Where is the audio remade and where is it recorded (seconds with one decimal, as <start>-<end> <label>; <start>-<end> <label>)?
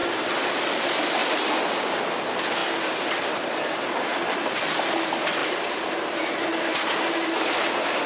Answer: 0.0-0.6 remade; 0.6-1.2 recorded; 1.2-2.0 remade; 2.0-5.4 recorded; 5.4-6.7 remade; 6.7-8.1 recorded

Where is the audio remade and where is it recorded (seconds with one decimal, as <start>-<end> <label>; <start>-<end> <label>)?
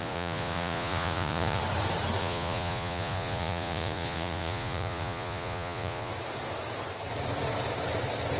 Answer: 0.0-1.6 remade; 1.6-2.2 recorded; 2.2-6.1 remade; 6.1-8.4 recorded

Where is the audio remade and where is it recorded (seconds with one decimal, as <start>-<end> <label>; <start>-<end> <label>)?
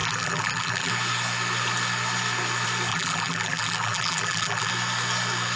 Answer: 0.0-0.9 remade; 0.9-2.9 recorded; 2.9-4.7 remade; 4.7-5.6 recorded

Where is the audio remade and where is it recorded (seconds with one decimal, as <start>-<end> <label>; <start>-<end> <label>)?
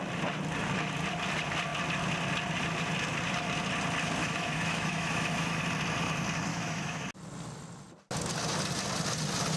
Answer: 0.0-4.2 recorded; 4.2-5.6 remade; 5.6-6.5 recorded; 6.5-7.0 remade; 7.0-9.6 recorded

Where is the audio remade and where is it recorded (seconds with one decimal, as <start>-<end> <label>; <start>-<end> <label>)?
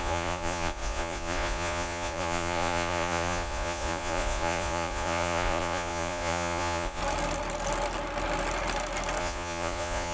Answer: 0.0-7.0 remade; 7.0-9.2 recorded; 9.2-10.1 remade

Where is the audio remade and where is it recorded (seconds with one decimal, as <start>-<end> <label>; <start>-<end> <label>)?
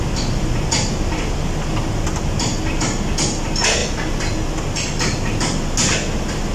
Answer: 0.0-6.5 recorded